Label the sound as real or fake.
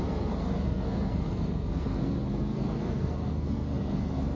fake